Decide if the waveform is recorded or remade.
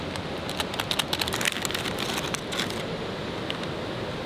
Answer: recorded